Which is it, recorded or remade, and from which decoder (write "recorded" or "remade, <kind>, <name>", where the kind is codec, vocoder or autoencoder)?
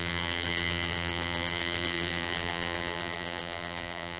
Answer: remade, vocoder, BigVGAN v2